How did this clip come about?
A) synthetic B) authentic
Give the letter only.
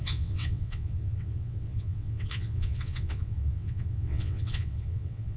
A